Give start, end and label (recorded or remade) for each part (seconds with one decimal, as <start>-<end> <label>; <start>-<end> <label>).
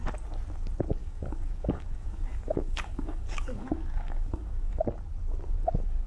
0.0-1.0 recorded; 1.0-4.7 remade; 4.7-6.1 recorded